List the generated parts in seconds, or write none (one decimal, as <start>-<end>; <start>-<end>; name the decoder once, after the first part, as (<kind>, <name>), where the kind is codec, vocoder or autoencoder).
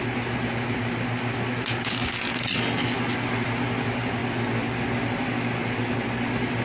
0.0-4.2 (vocoder, BigVGAN v2); 5.2-6.6